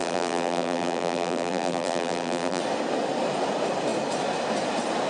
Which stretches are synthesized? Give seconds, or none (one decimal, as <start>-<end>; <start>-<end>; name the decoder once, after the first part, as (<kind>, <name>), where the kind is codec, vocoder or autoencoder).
0.0-2.6 (vocoder, BigVGAN v2)